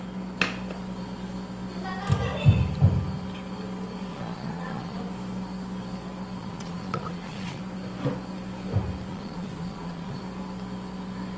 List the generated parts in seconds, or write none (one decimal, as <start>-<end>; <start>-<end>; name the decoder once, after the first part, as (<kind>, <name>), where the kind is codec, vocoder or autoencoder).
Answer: 4.1-5.0 (vocoder, Vocos); 6.4-7.6; 9.1-10.2